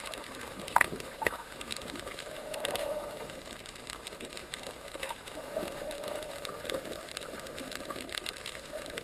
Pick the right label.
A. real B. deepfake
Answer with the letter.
B